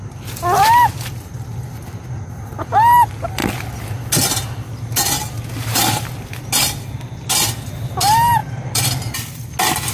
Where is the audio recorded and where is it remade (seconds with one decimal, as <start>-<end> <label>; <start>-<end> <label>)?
0.0-8.4 recorded; 8.4-9.3 remade; 9.3-9.9 recorded